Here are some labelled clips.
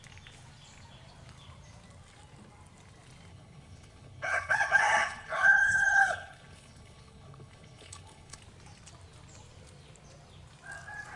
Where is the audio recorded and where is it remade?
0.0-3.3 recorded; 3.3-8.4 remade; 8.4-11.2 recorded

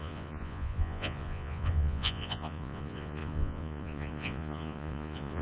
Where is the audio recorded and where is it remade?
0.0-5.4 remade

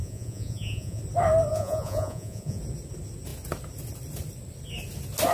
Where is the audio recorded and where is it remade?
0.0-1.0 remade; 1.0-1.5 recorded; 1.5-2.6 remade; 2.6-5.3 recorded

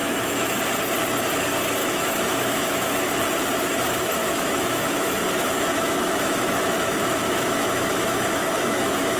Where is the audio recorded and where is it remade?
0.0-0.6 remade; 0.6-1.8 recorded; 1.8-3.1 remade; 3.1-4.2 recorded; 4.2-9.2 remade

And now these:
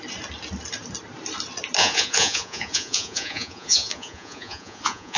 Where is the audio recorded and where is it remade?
0.0-1.8 recorded; 1.8-5.2 remade

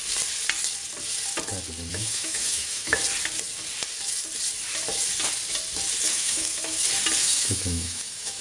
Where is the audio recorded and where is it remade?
0.0-1.9 recorded; 1.9-3.0 remade; 3.0-6.1 recorded; 6.1-6.8 remade; 6.8-7.2 recorded; 7.2-8.4 remade

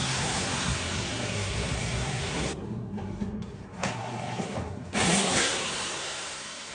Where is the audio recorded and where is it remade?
0.0-6.7 remade